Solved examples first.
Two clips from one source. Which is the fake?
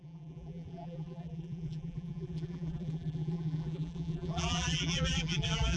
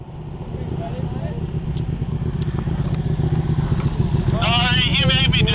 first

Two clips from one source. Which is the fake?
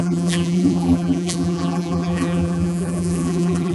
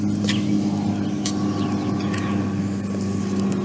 first